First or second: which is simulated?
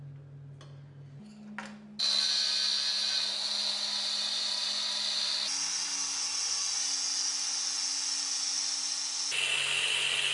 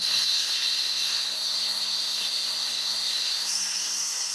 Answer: second